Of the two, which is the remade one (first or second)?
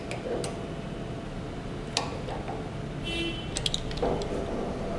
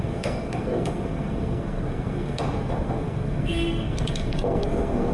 second